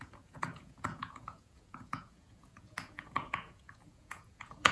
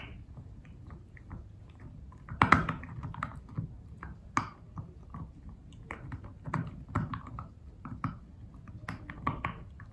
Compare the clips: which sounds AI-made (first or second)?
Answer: first